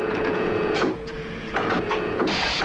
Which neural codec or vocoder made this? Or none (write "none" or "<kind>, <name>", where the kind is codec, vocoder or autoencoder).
vocoder, Vocos